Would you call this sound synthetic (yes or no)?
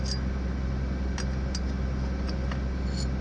no